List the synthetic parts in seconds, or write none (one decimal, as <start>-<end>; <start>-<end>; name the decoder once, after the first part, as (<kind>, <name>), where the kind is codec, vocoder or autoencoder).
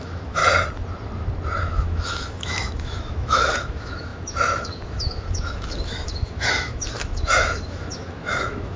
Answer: 0.0-0.4 (autoencoder, DAC-VAE); 1.6-8.8